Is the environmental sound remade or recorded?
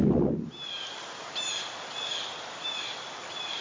recorded